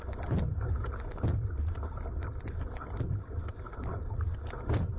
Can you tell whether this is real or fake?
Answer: fake